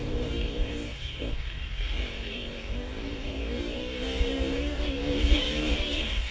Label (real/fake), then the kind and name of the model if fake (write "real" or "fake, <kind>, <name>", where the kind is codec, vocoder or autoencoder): fake, codec, DAC